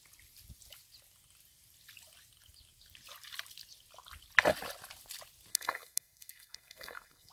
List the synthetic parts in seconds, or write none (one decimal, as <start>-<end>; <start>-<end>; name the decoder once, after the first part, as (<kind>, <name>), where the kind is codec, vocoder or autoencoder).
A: 5.5-7.3 (codec, SNAC)